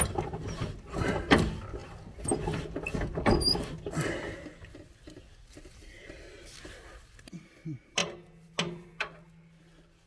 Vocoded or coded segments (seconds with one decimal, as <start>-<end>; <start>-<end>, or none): none